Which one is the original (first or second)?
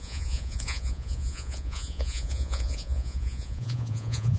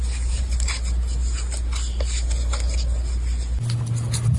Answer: second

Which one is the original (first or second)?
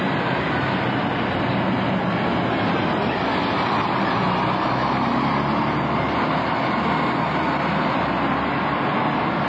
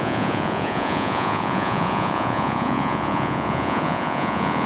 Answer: first